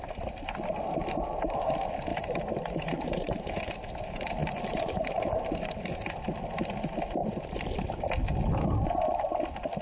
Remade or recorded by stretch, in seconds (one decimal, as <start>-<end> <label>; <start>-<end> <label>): 0.0-2.1 recorded; 2.1-3.5 remade; 3.5-4.4 recorded; 4.4-6.0 remade; 6.0-9.8 recorded